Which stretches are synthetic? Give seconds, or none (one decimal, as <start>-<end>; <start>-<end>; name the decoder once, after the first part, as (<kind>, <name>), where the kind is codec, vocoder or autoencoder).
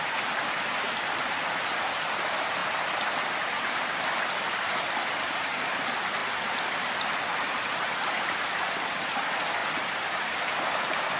none